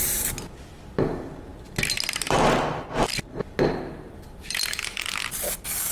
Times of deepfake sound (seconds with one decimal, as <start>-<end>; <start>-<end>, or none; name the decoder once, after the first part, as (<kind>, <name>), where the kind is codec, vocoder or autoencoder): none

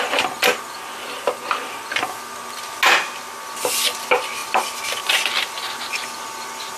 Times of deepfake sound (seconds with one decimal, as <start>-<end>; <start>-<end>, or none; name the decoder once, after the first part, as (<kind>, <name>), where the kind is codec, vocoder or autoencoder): none

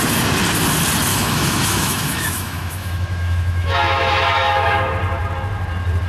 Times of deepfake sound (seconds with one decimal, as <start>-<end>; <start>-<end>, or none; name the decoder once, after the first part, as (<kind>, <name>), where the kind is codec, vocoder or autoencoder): 1.1-4.8 (autoencoder, DAC-VAE)

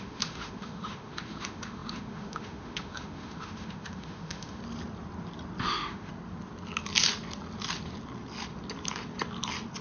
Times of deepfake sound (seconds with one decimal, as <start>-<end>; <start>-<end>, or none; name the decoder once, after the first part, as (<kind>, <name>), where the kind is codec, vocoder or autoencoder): 0.0-4.6 (autoencoder, DAC-VAE); 5.6-6.1

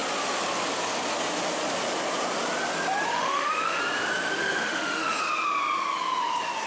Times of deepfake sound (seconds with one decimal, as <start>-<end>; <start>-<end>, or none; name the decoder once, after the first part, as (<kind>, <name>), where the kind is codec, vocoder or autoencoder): 3.1-3.8 (autoencoder, DAC-VAE); 4.4-5.2

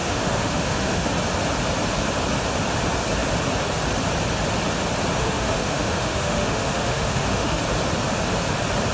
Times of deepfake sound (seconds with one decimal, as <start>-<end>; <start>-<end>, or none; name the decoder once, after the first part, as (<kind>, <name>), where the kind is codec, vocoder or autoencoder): 0.0-1.1 (autoencoder, DAC-VAE); 5.2-7.6

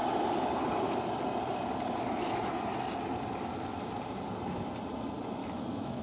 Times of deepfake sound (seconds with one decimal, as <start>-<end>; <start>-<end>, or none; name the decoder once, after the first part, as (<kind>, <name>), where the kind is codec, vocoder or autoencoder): 5.4-6.0 (autoencoder, DAC-VAE)

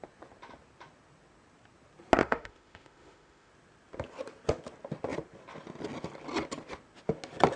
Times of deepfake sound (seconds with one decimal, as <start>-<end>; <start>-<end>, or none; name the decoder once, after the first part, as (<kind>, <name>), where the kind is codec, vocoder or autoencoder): 2.2-3.5 (autoencoder, DAC-VAE)